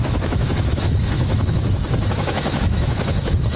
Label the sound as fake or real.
fake